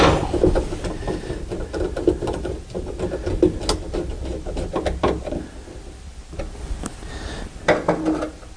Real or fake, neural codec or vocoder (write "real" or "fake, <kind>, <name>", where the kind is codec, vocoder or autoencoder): real